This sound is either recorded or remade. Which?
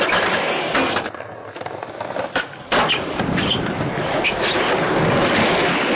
recorded